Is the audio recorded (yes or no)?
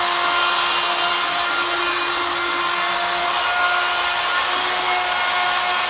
yes